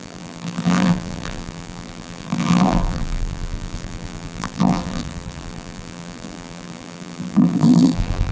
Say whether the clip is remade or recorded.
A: remade